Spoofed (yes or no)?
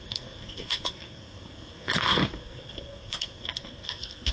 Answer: yes